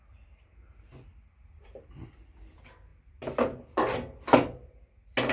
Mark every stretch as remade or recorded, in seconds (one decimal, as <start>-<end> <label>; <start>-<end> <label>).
0.0-5.3 recorded